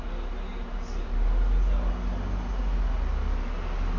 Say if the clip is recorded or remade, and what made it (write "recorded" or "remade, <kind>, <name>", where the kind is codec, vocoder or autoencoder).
recorded